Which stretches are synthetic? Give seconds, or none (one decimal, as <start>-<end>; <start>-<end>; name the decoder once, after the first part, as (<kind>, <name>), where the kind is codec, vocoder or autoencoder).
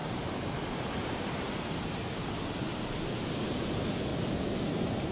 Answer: 0.0-2.1 (vocoder, BigVGAN v2); 4.1-5.1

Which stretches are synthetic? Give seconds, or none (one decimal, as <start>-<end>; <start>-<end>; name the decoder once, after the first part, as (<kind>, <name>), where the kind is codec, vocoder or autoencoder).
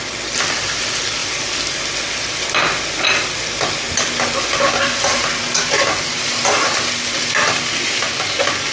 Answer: none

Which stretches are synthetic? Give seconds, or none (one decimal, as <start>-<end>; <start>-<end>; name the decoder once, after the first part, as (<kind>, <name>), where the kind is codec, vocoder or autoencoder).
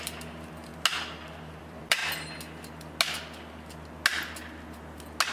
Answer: 0.0-0.7 (vocoder, BigVGAN v2); 1.4-2.0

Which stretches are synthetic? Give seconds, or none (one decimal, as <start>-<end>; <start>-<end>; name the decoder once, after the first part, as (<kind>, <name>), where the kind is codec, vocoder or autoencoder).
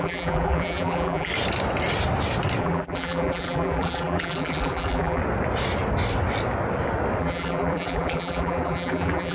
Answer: 0.0-1.3 (vocoder, BigVGAN v2); 2.6-5.2; 7.2-9.3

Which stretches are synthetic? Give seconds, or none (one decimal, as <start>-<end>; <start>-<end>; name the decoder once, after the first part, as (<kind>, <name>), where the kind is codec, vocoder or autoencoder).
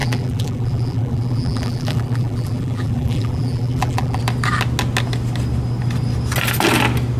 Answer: 0.0-4.2 (vocoder, BigVGAN v2)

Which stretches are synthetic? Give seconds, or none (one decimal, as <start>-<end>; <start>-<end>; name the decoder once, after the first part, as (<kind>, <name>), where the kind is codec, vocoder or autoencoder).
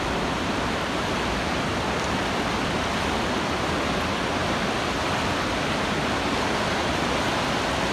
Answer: none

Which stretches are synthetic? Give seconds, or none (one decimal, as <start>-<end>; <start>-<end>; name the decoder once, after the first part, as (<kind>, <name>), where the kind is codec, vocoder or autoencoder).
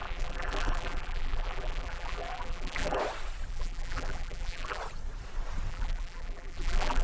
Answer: 0.0-3.0 (vocoder, BigVGAN v2); 3.5-4.8; 5.7-7.0